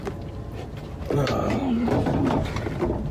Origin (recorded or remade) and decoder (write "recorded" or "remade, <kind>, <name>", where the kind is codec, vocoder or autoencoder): remade, vocoder, BigVGAN v2